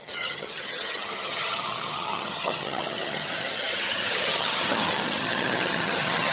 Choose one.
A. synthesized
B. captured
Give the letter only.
A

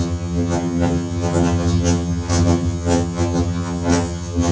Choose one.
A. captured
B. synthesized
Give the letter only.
B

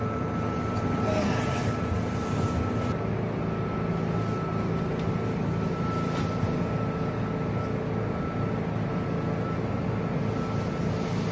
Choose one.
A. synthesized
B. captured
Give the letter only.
B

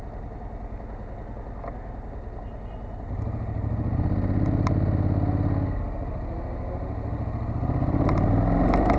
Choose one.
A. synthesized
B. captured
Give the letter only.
B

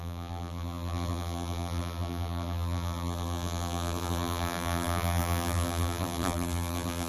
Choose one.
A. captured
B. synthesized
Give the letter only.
B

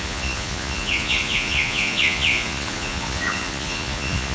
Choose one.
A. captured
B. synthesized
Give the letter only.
B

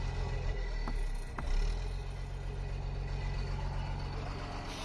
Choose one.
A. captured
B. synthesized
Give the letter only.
A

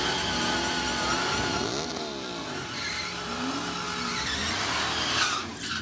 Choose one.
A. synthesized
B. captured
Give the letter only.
B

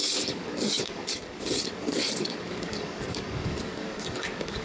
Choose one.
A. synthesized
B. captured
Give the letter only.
A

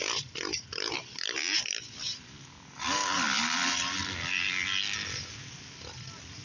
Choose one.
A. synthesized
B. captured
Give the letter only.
B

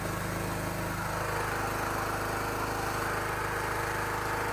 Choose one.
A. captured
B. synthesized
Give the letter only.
A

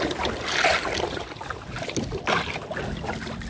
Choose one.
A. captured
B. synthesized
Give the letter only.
A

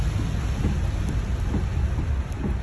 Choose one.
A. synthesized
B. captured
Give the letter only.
B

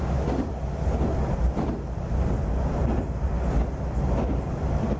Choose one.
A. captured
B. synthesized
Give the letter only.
A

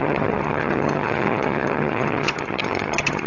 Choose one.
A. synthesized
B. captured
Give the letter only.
A